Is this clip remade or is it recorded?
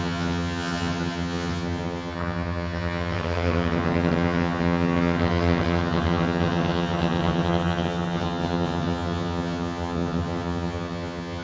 remade